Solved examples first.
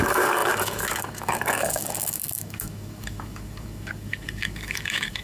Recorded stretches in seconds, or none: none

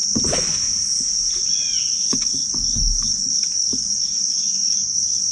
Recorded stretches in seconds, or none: 0.0-2.0

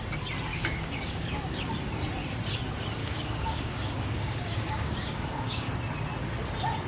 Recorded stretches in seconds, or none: 0.0-0.5; 1.7-3.0; 5.7-6.9

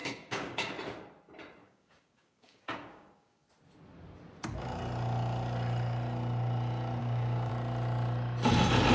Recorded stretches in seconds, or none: 0.7-1.6; 3.5-7.0; 7.5-8.9

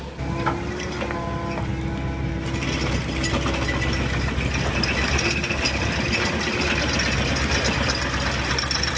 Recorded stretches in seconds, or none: 0.0-9.0

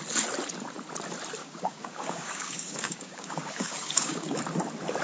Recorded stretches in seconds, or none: 0.0-1.4; 4.4-5.0

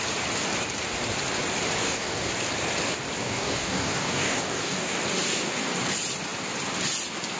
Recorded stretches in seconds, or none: 0.0-1.8; 2.3-3.2; 5.0-7.4